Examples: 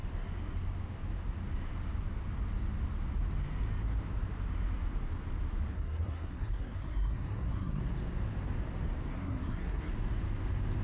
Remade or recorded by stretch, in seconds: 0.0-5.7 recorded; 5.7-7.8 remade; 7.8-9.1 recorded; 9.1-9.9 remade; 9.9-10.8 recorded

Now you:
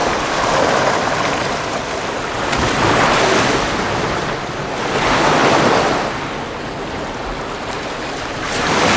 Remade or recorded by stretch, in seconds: 0.0-9.0 recorded

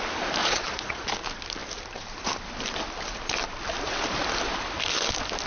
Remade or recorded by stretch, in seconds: 0.0-0.4 recorded; 0.4-1.1 remade; 1.1-5.5 recorded

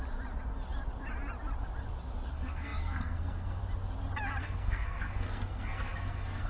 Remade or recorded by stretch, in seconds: 0.0-2.3 recorded; 2.3-3.6 remade; 3.6-4.4 recorded; 4.4-6.5 remade

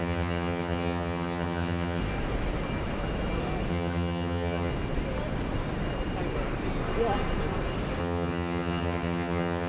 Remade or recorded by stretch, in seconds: 0.0-2.0 remade; 2.0-3.7 recorded; 3.7-4.7 remade; 4.7-8.0 recorded; 8.0-9.7 remade

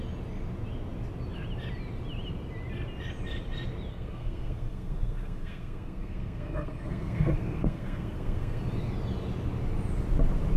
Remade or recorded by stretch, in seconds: 0.0-3.9 recorded; 3.9-8.6 remade; 8.6-10.6 recorded

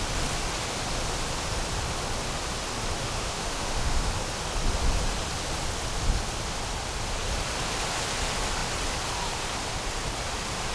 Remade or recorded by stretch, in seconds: 0.0-3.0 recorded; 3.0-4.1 remade; 4.1-10.7 recorded

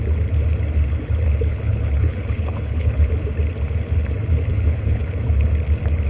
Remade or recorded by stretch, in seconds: 0.0-1.5 recorded; 1.5-3.1 remade; 3.1-4.5 recorded; 4.5-5.0 remade; 5.0-6.1 recorded